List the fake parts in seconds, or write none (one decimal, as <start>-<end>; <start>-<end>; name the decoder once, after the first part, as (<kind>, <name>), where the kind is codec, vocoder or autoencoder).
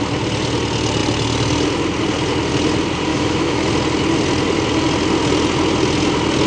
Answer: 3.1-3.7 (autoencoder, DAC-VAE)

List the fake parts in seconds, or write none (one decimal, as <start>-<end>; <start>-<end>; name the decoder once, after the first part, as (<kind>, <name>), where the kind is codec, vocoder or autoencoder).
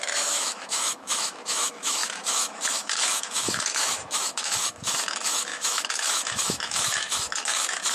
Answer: 0.0-7.9 (autoencoder, DAC-VAE)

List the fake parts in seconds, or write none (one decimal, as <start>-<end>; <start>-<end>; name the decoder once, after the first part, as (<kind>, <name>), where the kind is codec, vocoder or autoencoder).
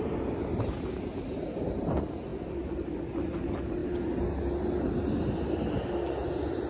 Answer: none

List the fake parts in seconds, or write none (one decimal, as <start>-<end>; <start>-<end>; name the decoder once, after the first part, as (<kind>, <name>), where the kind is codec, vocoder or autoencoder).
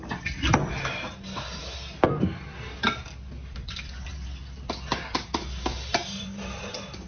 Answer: 5.7-6.6 (vocoder, BigVGAN v2)